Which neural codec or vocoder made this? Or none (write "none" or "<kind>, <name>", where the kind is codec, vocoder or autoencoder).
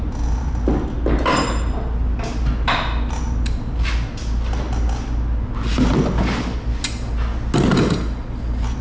none